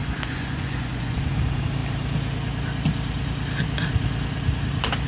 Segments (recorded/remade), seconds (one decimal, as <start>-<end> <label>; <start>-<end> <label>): 0.0-1.2 remade; 1.2-5.1 recorded